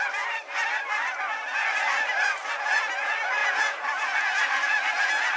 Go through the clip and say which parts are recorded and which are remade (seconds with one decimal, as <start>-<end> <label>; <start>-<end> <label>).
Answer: 0.0-3.4 recorded; 3.4-4.4 remade; 4.4-5.4 recorded